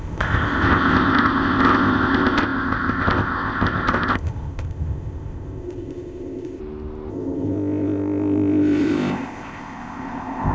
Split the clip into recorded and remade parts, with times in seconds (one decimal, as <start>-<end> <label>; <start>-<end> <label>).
0.0-6.6 remade; 6.6-7.1 recorded; 7.1-10.5 remade